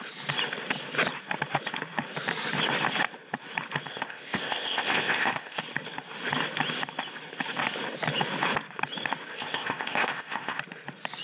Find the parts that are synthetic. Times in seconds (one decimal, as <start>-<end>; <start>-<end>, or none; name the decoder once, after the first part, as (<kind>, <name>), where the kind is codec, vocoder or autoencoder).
3.9-5.6 (codec, ZipCodec); 9.3-10.6